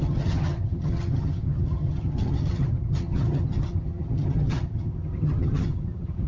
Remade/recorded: remade